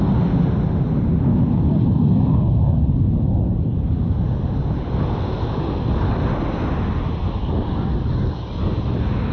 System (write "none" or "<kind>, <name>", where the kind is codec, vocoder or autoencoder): none